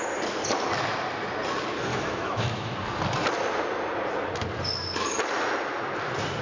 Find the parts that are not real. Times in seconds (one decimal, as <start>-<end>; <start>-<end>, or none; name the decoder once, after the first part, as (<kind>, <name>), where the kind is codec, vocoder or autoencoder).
1.9-2.7 (autoencoder, DAC-VAE)